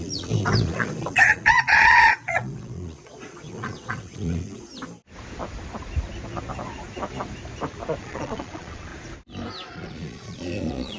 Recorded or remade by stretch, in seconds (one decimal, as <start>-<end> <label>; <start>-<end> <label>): 0.0-4.7 remade; 4.7-8.0 recorded; 8.0-8.9 remade; 8.9-9.7 recorded; 9.7-11.0 remade